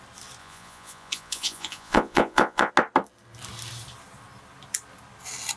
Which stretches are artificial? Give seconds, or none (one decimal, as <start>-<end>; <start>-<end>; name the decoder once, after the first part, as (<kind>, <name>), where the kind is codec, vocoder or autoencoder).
0.4-2.7 (vocoder, Vocos)